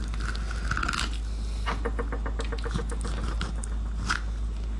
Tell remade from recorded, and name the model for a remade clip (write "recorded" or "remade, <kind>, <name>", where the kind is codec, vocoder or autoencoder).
recorded